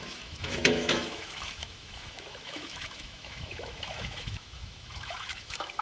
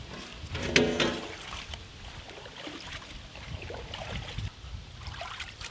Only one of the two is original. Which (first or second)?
second